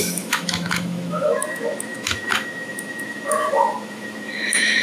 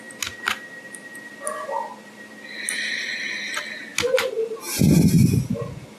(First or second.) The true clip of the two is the second